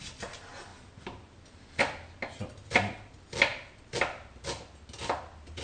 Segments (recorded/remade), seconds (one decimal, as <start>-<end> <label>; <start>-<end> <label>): 0.0-5.6 recorded